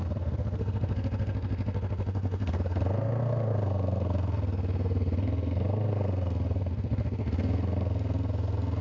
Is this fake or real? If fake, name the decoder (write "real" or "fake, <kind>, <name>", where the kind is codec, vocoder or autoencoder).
fake, codec, SNAC